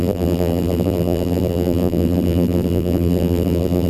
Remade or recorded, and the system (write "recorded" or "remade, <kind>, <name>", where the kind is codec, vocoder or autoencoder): remade, vocoder, BigVGAN v2